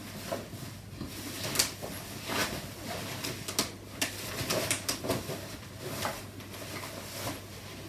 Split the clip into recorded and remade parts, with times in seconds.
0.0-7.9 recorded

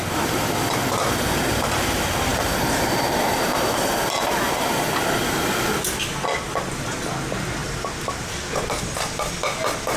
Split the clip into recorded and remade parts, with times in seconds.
0.0-7.6 recorded; 7.6-8.4 remade; 8.4-10.0 recorded

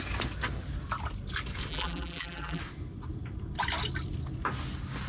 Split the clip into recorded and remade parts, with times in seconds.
0.0-1.7 recorded; 1.7-2.6 remade; 2.6-5.1 recorded